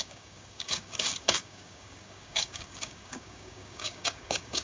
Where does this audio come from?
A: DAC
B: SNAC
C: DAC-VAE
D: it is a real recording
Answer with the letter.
A